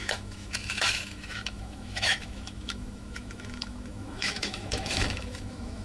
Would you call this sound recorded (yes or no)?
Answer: no